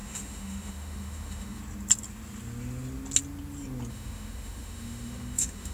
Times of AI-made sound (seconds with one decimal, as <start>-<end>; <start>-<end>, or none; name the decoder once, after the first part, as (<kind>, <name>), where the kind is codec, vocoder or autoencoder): 0.0-1.6 (autoencoder, DAC-VAE); 3.9-5.7